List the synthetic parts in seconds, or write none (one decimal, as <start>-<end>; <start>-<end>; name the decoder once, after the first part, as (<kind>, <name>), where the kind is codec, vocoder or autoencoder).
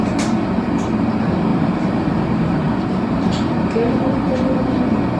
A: 1.5-4.6 (vocoder, BigVGAN v2)